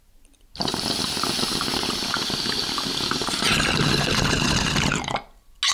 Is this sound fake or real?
real